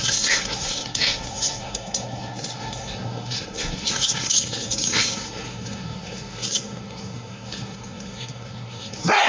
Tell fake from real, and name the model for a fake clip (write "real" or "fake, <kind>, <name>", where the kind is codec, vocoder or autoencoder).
fake, codec, SNAC